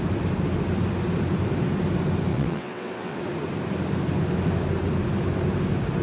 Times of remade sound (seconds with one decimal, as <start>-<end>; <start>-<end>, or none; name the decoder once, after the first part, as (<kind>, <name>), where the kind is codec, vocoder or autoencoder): 2.3-3.2 (vocoder, WaveNeXt)